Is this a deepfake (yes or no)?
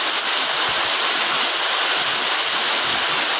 no